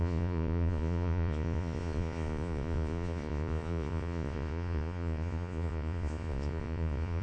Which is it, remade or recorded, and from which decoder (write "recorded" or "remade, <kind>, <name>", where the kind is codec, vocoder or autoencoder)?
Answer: remade, vocoder, Vocos